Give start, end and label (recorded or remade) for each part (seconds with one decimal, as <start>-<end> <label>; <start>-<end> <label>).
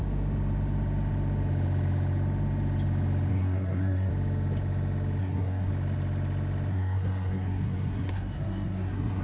0.0-3.3 recorded; 3.3-4.1 remade; 4.1-5.2 recorded; 5.2-5.7 remade; 5.7-6.7 recorded; 6.7-9.2 remade